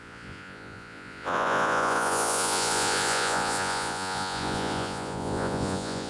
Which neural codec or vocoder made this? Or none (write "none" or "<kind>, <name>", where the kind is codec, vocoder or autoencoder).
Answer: vocoder, Vocos